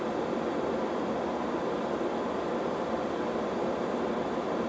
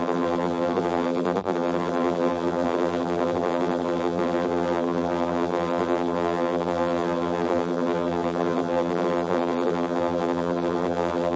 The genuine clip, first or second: first